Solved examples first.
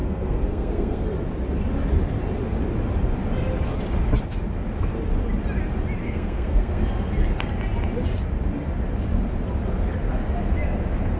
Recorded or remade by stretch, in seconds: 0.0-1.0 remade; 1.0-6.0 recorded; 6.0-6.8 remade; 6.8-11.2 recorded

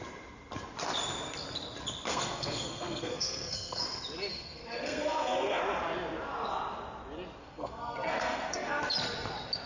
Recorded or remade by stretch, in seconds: 0.0-2.1 recorded; 2.1-3.8 remade; 3.8-4.3 recorded; 4.3-5.6 remade; 5.6-7.4 recorded; 7.4-8.8 remade; 8.8-9.7 recorded

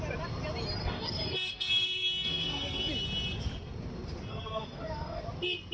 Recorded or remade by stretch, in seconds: 0.0-0.8 recorded; 0.8-2.9 remade; 2.9-4.3 recorded; 4.3-5.2 remade; 5.2-5.7 recorded

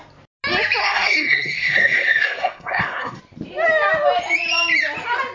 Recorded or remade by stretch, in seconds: 0.0-0.8 recorded; 0.8-3.2 remade; 3.2-5.3 recorded

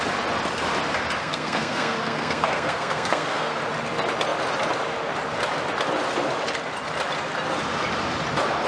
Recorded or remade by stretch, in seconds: 0.0-1.2 recorded; 1.2-3.6 remade; 3.6-8.7 recorded

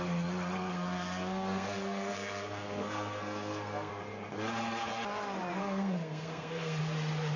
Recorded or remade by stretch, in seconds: 0.0-0.7 recorded; 0.7-3.9 remade; 3.9-5.6 recorded; 5.6-6.8 remade; 6.8-7.4 recorded

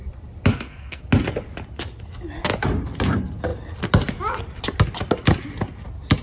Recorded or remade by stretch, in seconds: 0.0-0.5 recorded; 0.5-1.0 remade; 1.0-6.2 recorded

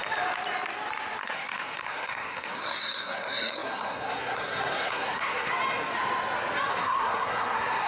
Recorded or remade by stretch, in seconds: 0.0-1.2 recorded; 1.2-5.5 remade; 5.5-6.7 recorded; 6.7-7.9 remade